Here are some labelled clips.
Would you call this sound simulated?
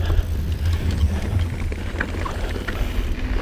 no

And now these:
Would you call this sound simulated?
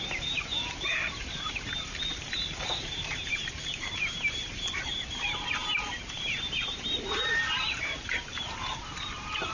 yes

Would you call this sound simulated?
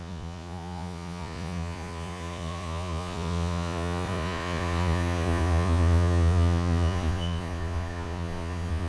yes